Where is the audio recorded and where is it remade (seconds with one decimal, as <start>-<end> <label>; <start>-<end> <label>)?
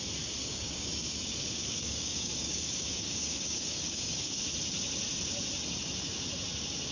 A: 0.0-0.4 recorded; 0.4-4.4 remade; 4.4-6.9 recorded